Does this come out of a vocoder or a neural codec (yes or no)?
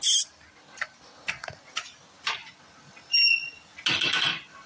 no